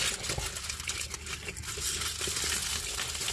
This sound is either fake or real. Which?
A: real